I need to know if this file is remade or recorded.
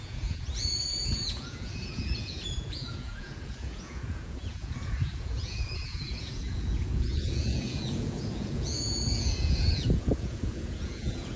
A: remade